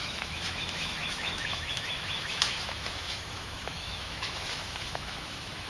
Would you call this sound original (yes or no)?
no